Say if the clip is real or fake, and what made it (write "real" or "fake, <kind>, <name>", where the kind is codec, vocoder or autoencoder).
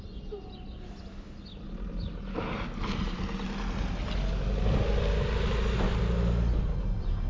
real